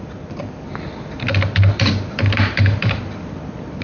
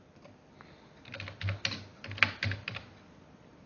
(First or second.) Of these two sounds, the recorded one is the second